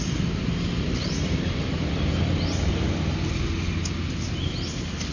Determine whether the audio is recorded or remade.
recorded